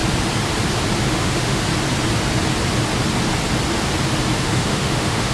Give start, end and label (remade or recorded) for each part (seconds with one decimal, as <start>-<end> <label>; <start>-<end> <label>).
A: 0.0-1.1 recorded; 1.1-1.6 remade; 1.6-4.4 recorded; 4.4-5.3 remade